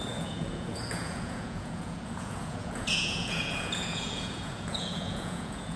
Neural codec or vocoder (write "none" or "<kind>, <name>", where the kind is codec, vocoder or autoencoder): vocoder, Vocos